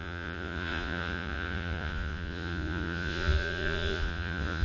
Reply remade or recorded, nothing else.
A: remade